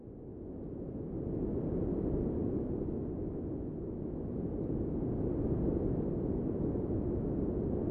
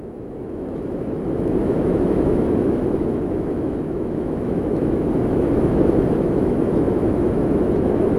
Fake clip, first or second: second